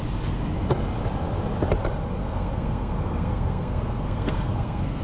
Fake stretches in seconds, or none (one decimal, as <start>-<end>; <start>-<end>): 2.2-5.0